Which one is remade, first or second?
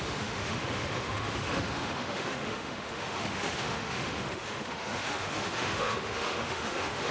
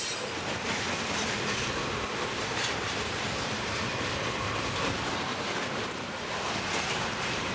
first